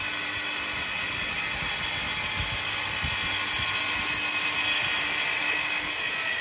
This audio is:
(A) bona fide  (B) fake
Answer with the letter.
A